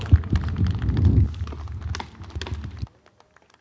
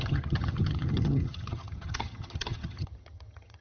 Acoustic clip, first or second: first